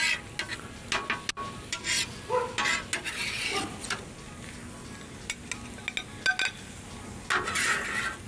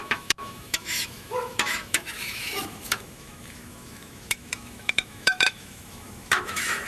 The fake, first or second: second